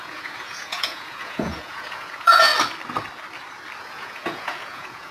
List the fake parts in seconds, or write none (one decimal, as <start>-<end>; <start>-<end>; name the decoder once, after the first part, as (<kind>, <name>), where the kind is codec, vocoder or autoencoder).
0.0-2.5 (vocoder, Vocos); 3.8-5.1